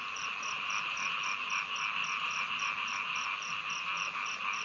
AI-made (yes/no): no